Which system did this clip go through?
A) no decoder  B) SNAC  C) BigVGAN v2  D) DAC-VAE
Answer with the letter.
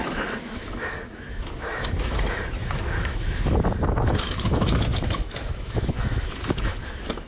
D